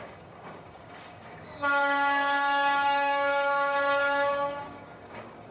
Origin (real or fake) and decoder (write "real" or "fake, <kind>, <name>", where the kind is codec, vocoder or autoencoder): fake, codec, DAC